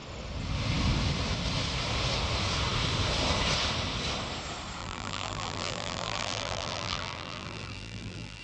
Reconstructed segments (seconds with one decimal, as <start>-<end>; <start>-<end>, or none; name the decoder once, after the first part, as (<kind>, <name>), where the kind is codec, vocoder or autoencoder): 4.8-8.4 (vocoder, BigVGAN v2)